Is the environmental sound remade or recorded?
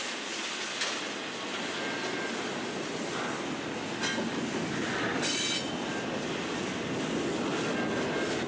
recorded